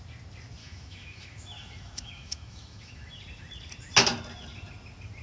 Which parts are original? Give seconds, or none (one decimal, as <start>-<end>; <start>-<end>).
0.0-0.6; 3.2-5.2